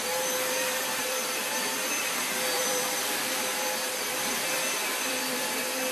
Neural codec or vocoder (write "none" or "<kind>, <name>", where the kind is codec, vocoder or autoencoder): vocoder, BigVGAN v2